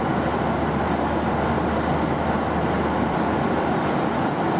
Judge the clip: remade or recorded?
recorded